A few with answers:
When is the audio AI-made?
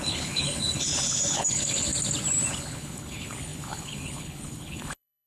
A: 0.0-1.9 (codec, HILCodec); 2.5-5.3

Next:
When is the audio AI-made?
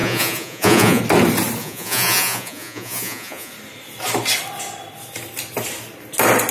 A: 0.0-1.0 (vocoder, Vocos); 1.6-3.5